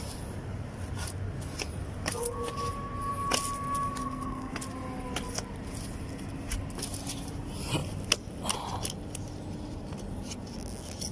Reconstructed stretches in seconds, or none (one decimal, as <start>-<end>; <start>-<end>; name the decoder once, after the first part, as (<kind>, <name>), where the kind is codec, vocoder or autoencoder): 4.0-4.6 (codec, SNAC)